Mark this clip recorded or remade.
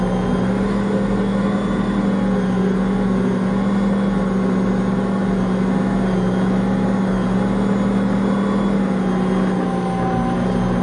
recorded